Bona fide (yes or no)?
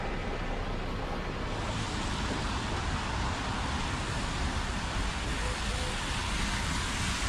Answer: yes